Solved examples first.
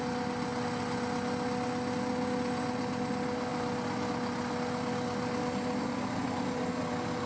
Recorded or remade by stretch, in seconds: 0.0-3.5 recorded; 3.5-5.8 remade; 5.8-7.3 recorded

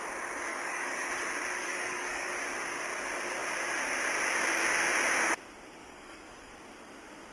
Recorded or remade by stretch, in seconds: 0.0-0.5 recorded; 0.5-1.1 remade; 1.1-1.6 recorded; 1.6-2.3 remade; 2.3-5.8 recorded; 5.8-6.5 remade; 6.5-7.3 recorded

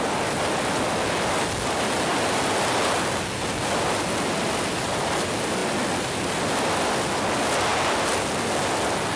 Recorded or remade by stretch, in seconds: 0.0-9.2 recorded

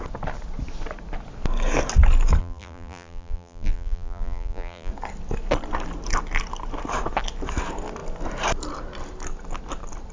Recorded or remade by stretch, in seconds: 0.0-2.4 recorded; 2.4-4.9 remade; 4.9-10.1 recorded